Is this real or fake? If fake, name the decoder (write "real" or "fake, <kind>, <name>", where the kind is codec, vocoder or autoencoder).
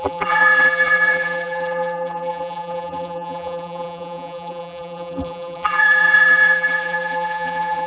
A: fake, vocoder, BigVGAN v2